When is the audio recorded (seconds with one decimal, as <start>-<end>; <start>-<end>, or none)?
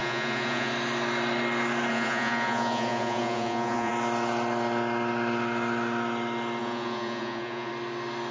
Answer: 0.7-1.9; 3.9-6.6; 7.7-8.3